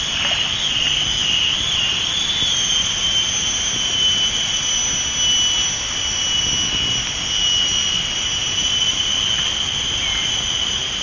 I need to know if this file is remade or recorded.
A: recorded